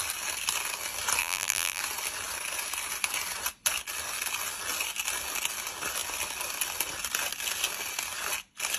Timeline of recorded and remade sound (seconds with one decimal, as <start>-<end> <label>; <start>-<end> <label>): 0.0-1.2 recorded; 1.2-1.8 remade; 1.8-8.8 recorded